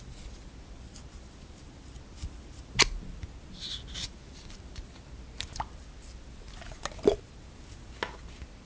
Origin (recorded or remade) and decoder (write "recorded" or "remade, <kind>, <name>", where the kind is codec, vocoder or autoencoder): recorded